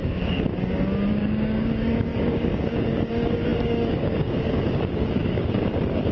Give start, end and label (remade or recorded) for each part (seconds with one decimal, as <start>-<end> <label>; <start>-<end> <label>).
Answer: 0.0-0.5 remade; 0.5-1.1 recorded; 1.1-6.1 remade